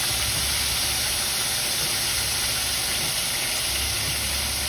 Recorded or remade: recorded